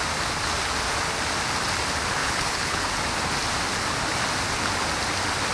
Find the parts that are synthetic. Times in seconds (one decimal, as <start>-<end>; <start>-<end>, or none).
2.2-2.8